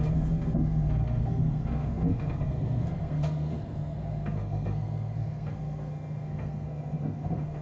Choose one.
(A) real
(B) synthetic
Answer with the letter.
B